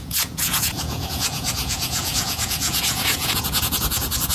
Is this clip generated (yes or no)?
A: yes